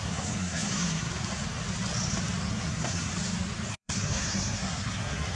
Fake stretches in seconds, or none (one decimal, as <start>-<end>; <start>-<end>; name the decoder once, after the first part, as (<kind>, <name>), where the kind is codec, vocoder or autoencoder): 0.0-1.1 (codec, SNAC); 2.5-3.1; 3.7-5.3

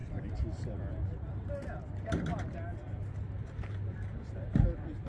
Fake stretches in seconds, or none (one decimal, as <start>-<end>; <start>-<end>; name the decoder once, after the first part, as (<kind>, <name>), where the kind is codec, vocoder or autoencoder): none

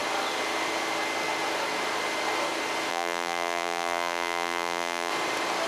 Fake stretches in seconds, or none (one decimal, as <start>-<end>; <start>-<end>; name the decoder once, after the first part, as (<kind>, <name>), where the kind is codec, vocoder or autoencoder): 2.9-5.1 (vocoder, BigVGAN v2)

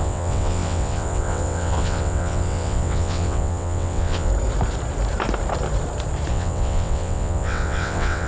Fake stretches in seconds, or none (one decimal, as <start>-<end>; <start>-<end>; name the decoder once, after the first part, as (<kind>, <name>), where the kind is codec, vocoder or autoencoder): 0.0-4.3 (vocoder, WaveNeXt); 6.3-8.3

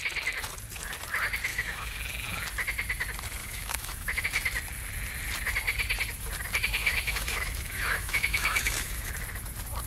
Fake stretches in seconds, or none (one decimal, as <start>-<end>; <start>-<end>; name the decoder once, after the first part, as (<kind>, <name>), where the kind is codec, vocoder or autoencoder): 1.5-2.0 (autoencoder, DAC-VAE); 3.4-4.2; 6.8-9.1

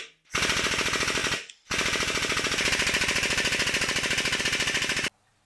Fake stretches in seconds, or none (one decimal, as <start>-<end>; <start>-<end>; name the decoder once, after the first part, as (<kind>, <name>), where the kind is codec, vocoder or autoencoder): none